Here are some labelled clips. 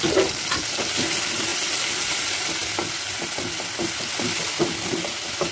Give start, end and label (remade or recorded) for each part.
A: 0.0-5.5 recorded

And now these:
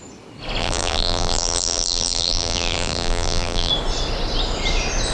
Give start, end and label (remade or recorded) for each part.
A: 0.0-0.6 recorded; 0.6-3.7 remade; 3.7-5.1 recorded

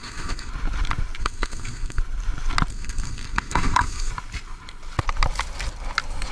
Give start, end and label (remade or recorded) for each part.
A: 0.0-0.5 remade; 0.5-1.2 recorded; 1.2-2.0 remade; 2.0-2.7 recorded; 2.7-4.1 remade; 4.1-6.3 recorded

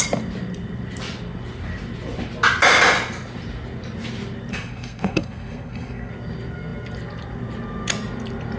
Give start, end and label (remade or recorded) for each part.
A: 0.0-4.5 recorded; 4.5-6.1 remade; 6.1-8.6 recorded

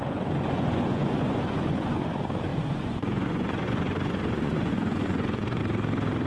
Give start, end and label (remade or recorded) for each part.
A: 0.0-5.6 remade; 5.6-6.3 recorded